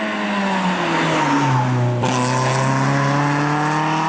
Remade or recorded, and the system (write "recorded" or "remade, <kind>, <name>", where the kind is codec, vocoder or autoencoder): recorded